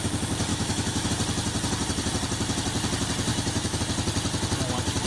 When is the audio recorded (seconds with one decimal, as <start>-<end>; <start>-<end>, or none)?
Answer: 0.0-0.5; 1.1-3.3; 3.8-5.1